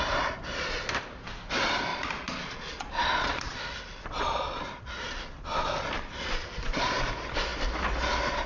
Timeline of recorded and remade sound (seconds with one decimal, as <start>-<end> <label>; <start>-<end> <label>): 0.0-1.9 recorded; 1.9-5.9 remade; 5.9-8.5 recorded